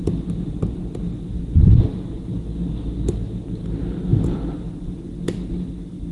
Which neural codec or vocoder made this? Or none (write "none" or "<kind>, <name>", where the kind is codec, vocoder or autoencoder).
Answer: none